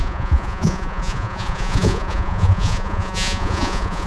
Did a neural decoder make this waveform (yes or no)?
yes